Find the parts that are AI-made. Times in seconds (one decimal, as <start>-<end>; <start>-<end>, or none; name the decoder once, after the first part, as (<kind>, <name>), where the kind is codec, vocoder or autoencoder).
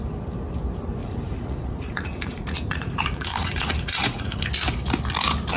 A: 1.0-4.4 (vocoder, Vocos)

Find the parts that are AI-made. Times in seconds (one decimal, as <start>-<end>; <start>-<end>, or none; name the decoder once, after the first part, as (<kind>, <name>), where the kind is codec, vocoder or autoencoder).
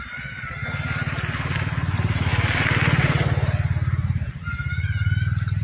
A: none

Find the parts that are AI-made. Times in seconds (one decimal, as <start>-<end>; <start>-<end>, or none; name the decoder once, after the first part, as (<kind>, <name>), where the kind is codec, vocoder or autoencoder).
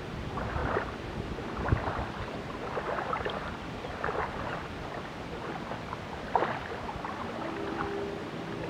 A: none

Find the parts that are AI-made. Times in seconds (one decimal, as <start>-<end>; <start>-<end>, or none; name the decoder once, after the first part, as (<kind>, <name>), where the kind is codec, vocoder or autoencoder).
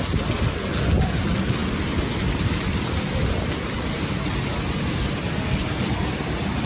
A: none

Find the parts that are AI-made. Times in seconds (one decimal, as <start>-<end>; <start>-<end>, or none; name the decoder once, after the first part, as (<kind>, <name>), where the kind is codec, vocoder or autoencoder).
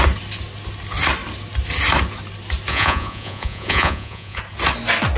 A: 2.7-4.4 (vocoder, Vocos)